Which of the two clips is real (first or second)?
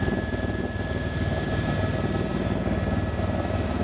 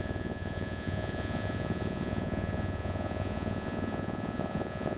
first